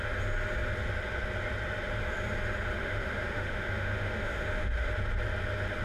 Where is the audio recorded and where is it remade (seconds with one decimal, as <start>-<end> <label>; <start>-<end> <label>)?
0.0-2.8 recorded; 2.8-4.9 remade; 4.9-5.8 recorded